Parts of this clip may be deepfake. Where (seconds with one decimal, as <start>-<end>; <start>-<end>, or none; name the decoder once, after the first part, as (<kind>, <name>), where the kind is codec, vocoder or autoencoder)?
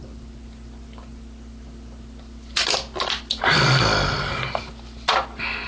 none